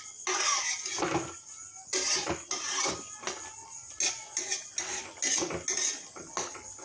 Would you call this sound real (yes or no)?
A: yes